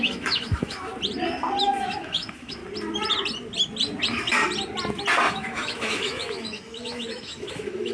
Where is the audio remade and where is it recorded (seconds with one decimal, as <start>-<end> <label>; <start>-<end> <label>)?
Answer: 0.0-0.9 remade; 0.9-1.6 recorded; 1.6-2.6 remade; 2.6-5.3 recorded; 5.3-7.9 remade